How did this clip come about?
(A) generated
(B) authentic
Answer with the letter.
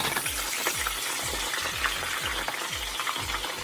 B